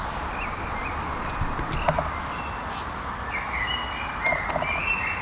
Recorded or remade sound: recorded